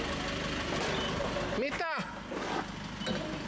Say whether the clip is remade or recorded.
recorded